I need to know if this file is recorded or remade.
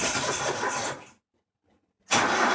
recorded